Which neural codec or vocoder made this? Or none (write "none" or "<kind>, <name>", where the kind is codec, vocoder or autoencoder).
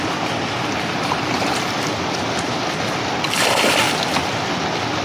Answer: none